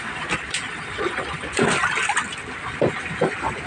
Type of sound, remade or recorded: recorded